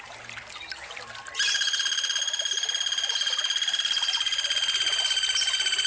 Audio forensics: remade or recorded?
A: recorded